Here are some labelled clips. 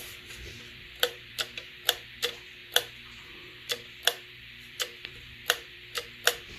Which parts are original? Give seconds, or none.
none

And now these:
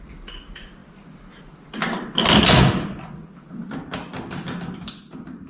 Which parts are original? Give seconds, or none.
0.0-5.5

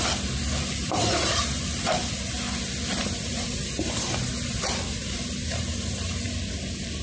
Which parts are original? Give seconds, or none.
0.0-0.8; 1.6-3.0; 4.3-5.0; 6.1-7.0

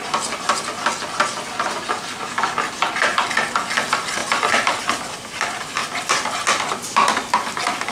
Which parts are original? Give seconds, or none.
0.0-7.9

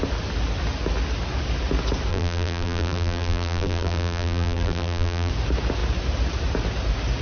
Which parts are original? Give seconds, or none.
0.0-2.1; 5.3-7.2

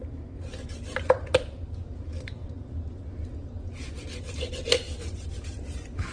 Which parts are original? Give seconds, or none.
0.0-6.1

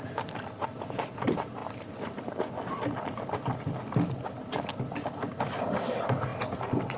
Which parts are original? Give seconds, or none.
1.6-5.4; 6.3-7.0

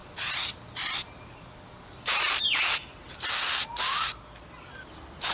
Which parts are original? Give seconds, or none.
3.2-5.3